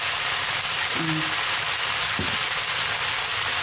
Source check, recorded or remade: recorded